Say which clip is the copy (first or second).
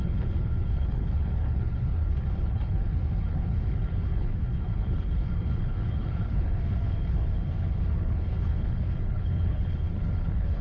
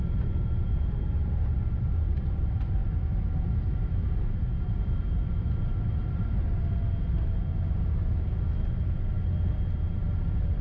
first